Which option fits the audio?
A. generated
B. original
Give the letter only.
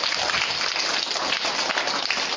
B